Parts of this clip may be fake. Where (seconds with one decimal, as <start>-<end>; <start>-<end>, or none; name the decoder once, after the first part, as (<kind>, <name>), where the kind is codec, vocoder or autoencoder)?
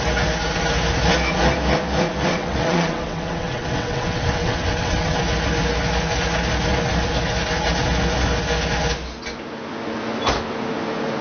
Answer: 2.3-5.2 (vocoder, WaveNeXt)